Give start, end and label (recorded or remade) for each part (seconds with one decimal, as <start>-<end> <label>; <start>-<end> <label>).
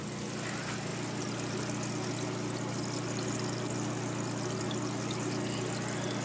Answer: 0.0-6.2 recorded